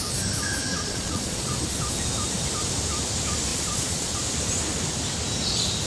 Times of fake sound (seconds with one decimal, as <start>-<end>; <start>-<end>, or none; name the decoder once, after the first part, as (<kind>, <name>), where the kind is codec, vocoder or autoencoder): 0.7-1.6 (vocoder, Vocos); 3.5-4.2